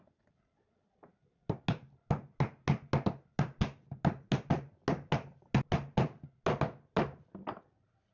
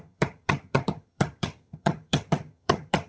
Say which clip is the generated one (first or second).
second